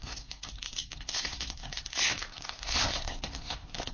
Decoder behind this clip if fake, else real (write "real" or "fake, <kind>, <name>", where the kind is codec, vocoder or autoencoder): fake, codec, SNAC